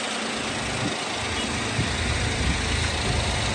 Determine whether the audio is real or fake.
real